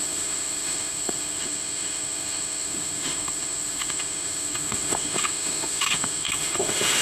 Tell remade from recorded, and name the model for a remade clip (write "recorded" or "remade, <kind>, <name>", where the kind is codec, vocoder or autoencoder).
remade, autoencoder, DAC-VAE